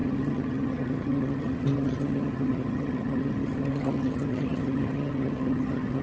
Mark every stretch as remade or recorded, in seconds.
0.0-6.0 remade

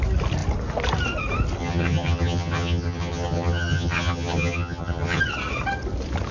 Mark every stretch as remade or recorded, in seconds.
0.0-1.6 recorded; 1.6-5.2 remade; 5.2-6.3 recorded